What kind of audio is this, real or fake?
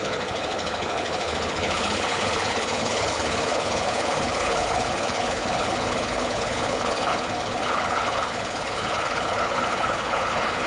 fake